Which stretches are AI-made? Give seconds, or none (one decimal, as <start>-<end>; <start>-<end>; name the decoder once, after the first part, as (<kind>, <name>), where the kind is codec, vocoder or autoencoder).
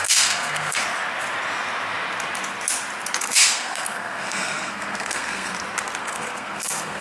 0.0-0.8 (codec, SNAC); 3.2-5.5; 6.0-7.0